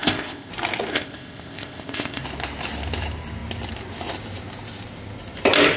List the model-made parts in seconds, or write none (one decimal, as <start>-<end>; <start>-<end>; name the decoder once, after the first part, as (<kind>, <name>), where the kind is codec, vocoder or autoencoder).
0.0-0.5 (codec, ZipCodec); 0.9-2.2